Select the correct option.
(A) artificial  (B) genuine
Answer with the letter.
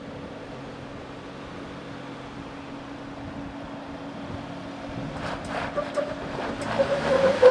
B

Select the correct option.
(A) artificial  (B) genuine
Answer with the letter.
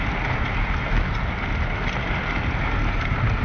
B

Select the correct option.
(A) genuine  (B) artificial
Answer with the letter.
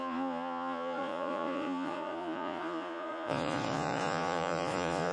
B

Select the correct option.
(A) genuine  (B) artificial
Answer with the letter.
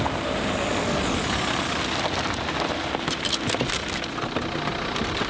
A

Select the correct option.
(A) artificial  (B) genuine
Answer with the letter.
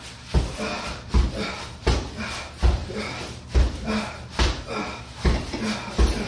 B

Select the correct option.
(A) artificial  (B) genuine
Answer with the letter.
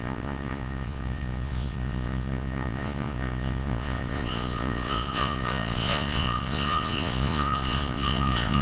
A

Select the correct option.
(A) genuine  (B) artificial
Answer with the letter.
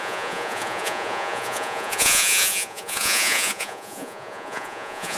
B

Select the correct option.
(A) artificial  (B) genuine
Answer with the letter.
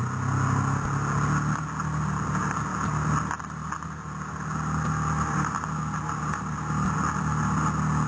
B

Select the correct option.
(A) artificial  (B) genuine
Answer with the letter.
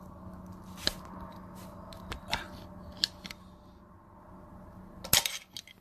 B